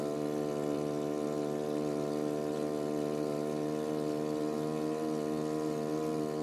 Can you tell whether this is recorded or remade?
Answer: recorded